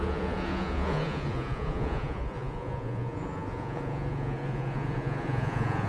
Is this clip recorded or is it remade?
remade